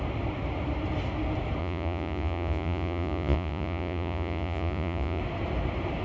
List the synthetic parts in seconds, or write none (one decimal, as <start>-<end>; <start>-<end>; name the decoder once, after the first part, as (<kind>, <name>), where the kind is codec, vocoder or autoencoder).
1.6-5.2 (vocoder, Vocos)